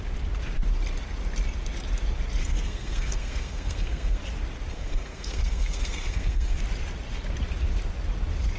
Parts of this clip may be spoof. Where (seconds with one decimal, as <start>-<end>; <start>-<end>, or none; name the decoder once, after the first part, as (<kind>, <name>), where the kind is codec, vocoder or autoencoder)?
2.4-4.2 (codec, SNAC); 4.7-6.6